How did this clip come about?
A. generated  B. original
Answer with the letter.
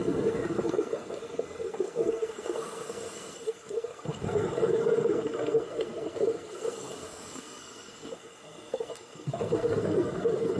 A